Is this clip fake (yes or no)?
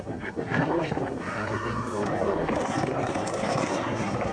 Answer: yes